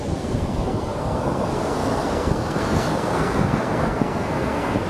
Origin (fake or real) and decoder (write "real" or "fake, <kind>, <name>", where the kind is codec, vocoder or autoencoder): fake, codec, SNAC